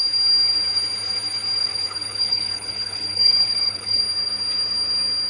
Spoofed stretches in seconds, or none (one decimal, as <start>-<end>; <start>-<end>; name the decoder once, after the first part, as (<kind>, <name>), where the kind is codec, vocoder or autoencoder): 1.6-4.0 (codec, HILCodec)